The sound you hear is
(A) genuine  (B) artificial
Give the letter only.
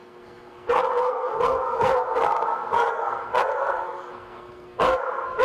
B